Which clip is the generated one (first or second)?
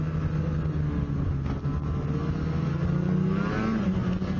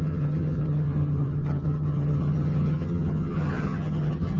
second